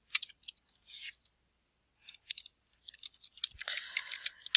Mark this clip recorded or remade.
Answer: recorded